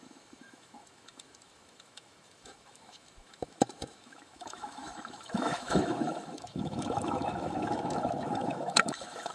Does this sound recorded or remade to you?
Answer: remade